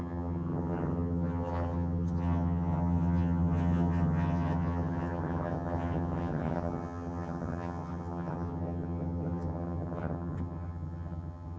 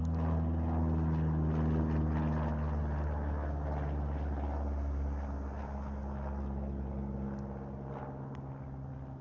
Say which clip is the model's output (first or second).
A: first